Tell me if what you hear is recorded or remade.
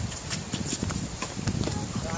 recorded